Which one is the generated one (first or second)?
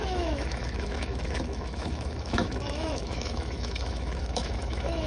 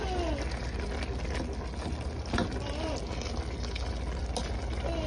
first